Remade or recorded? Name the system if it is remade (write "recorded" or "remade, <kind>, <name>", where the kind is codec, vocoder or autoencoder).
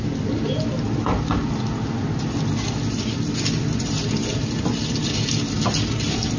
recorded